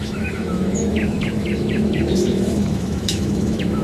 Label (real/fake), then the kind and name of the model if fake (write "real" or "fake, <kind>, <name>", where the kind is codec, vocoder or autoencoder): fake, autoencoder, DAC-VAE